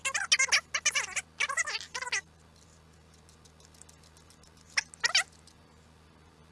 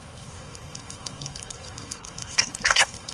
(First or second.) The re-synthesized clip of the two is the second